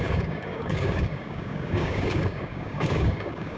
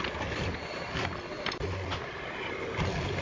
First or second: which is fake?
first